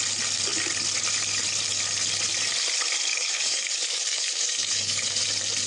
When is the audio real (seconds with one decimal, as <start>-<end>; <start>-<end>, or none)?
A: 0.0-3.1; 5.2-5.7